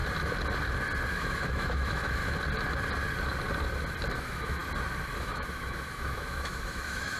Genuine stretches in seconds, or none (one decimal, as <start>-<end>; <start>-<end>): 0.0-1.1; 2.2-4.1; 4.6-5.2